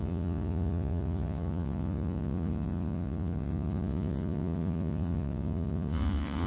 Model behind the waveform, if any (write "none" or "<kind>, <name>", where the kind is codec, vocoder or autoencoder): vocoder, Vocos